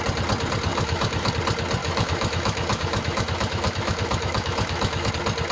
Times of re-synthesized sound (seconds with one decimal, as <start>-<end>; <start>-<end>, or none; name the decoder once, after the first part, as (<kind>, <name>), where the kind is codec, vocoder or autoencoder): 0.7-1.3 (autoencoder, DAC-VAE); 1.8-5.1